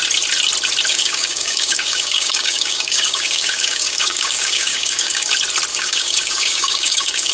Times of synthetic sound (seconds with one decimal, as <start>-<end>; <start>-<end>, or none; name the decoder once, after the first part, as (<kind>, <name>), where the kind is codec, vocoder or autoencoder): 0.9-5.3 (codec, DAC); 5.7-7.3